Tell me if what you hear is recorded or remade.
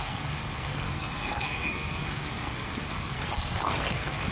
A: remade